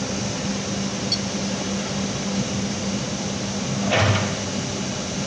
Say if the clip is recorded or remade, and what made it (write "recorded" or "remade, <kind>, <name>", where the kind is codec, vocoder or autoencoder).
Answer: recorded